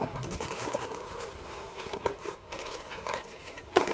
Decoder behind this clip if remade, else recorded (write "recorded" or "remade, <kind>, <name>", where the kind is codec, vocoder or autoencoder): remade, codec, SNAC